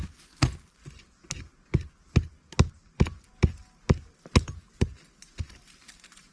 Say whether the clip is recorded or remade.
recorded